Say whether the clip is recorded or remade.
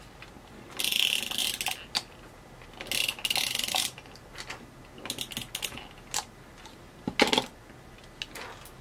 recorded